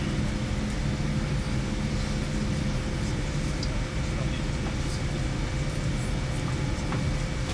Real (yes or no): yes